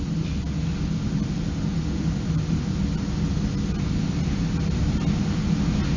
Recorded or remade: recorded